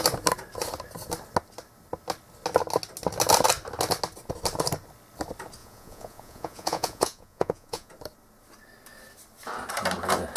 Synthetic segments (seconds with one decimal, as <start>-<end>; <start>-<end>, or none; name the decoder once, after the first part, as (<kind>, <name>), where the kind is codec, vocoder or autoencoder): 5.6-7.9 (vocoder, Vocos)